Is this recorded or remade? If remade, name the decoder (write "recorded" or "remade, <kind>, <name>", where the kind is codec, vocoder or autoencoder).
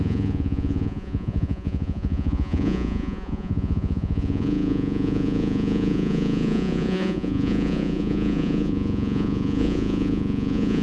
remade, vocoder, Vocos